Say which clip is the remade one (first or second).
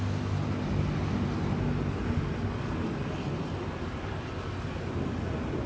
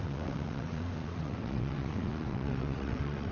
second